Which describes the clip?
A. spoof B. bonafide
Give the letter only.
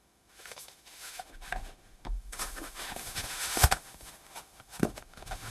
A